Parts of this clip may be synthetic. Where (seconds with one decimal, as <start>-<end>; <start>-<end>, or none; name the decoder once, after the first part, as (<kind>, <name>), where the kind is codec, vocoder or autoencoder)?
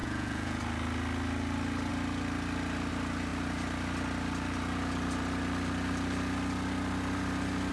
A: 0.0-0.6 (vocoder, Vocos)